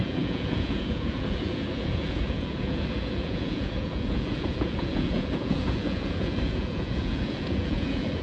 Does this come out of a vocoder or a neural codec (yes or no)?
yes